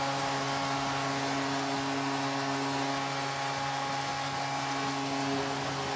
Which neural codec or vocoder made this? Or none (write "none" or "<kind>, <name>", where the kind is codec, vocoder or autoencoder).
none